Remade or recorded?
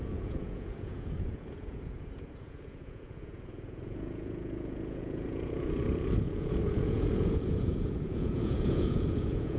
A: remade